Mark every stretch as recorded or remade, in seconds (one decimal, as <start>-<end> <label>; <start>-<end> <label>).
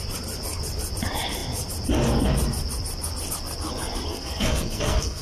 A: 0.0-4.1 recorded; 4.1-5.2 remade